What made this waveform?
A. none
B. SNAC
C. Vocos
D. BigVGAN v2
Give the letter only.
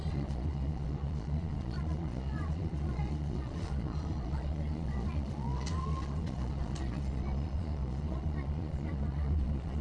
C